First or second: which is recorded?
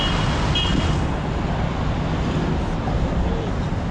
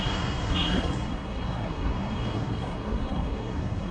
first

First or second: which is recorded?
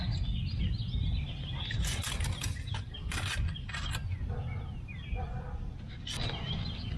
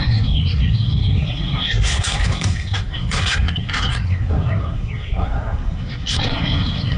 first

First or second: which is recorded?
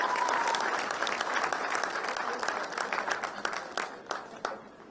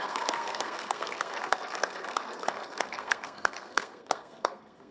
first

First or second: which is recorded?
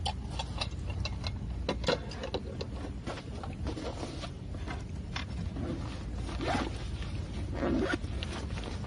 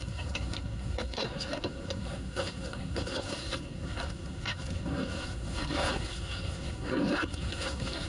first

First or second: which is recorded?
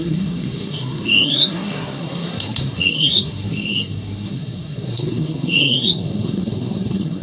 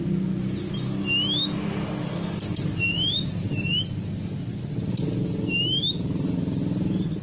second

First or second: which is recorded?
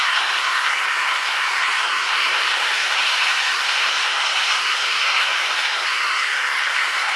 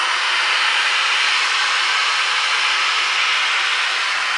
second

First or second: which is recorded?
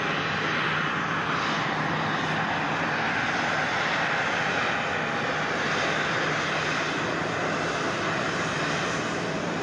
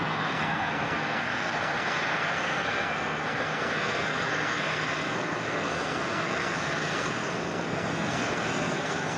first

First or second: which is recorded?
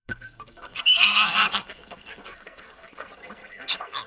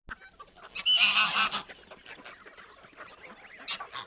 second